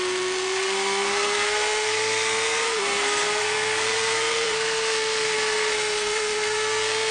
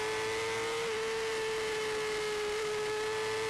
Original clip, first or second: second